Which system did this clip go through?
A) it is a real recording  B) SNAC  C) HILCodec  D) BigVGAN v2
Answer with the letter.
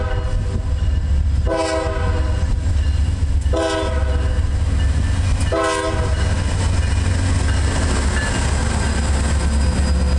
A